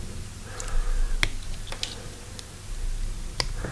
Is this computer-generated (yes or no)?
no